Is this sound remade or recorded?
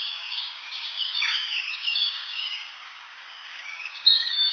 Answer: remade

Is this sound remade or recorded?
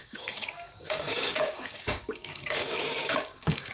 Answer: remade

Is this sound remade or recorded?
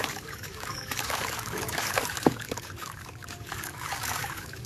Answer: remade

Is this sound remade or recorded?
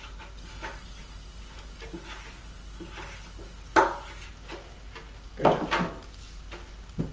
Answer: recorded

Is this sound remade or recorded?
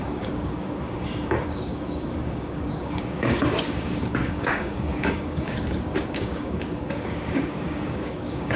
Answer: remade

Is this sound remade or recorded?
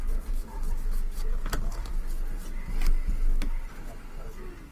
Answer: recorded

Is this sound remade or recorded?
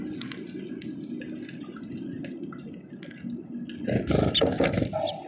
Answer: recorded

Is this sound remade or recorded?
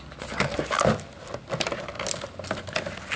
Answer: recorded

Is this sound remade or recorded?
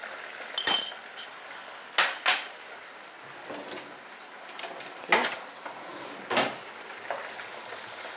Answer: recorded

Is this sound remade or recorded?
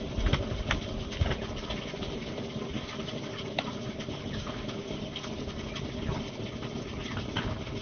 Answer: recorded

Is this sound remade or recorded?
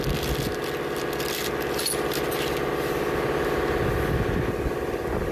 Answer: recorded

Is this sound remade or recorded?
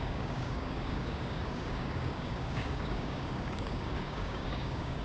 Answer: remade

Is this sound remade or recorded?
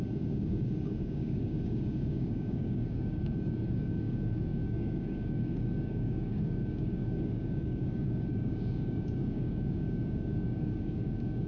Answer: remade